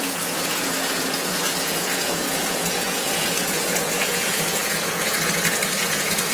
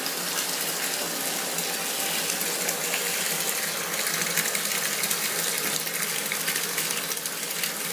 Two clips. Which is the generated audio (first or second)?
first